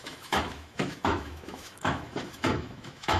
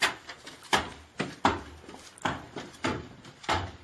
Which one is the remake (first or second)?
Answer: first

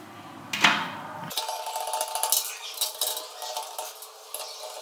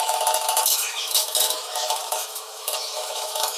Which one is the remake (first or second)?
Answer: second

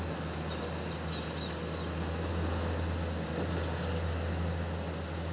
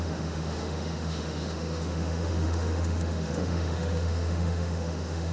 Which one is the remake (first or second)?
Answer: second